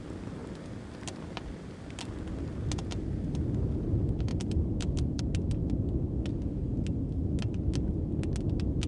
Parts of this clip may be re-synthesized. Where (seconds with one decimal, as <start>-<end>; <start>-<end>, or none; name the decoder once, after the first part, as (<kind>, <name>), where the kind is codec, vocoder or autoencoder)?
4.3-5.2 (vocoder, BigVGAN v2)